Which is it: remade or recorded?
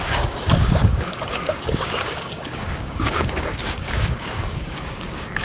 remade